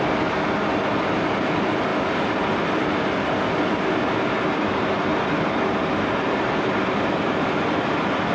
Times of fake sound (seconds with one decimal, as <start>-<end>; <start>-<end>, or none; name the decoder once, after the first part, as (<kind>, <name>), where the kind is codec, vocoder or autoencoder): 5.1-8.3 (vocoder, BigVGAN v2)